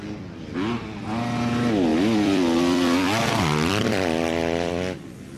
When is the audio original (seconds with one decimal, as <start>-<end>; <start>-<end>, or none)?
0.0-1.9; 4.7-5.4